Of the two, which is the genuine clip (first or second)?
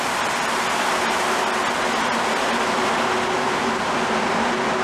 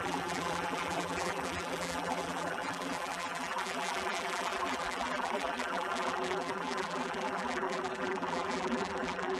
first